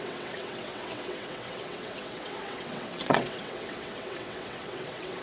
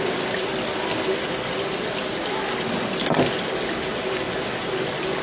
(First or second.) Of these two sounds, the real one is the second